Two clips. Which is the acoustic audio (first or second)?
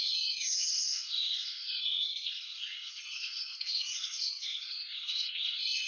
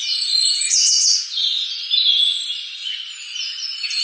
second